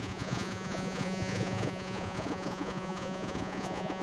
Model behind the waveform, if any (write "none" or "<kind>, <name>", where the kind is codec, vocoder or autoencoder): vocoder, Vocos